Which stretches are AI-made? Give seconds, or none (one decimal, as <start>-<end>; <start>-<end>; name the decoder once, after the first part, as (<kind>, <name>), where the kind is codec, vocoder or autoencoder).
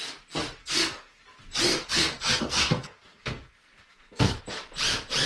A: 0.6-1.2 (codec, SNAC); 1.7-4.4